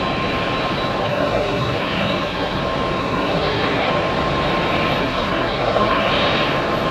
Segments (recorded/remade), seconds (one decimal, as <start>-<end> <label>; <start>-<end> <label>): 0.0-1.0 recorded; 1.0-2.6 remade; 2.6-3.0 recorded; 3.0-3.9 remade; 3.9-5.0 recorded; 5.0-6.1 remade; 6.1-6.9 recorded